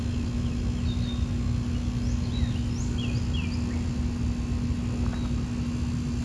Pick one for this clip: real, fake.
real